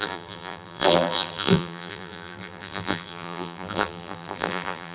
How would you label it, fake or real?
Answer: fake